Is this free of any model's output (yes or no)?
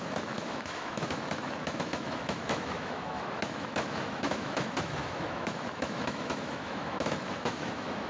no